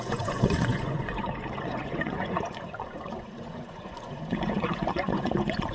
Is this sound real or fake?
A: fake